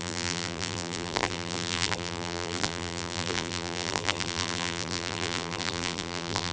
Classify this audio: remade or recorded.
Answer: remade